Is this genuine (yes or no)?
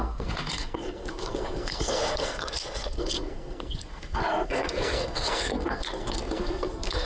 no